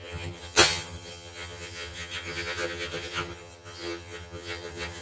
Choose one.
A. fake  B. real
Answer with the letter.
A